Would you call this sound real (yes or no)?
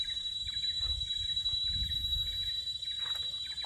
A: yes